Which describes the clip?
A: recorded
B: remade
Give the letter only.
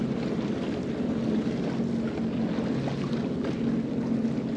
A